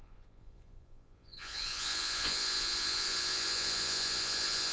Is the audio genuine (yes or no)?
no